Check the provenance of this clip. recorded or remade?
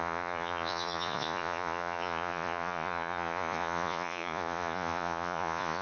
remade